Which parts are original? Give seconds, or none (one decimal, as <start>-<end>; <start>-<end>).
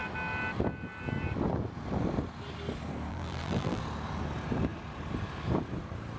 0.0-3.1; 3.8-6.2